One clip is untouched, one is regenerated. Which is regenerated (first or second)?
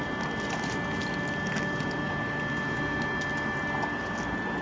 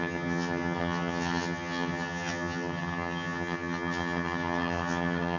second